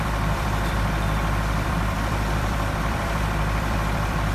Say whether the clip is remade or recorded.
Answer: remade